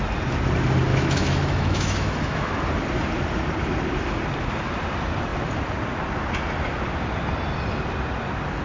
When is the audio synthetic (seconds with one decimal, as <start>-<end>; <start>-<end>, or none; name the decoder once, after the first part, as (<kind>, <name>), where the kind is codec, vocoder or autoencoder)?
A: 0.9-2.5 (autoencoder, DAC-VAE)